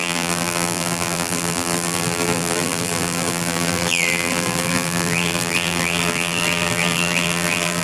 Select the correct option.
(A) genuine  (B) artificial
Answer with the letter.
B